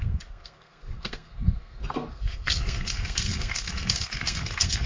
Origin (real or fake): fake